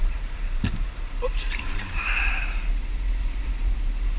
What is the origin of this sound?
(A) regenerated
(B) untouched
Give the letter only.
A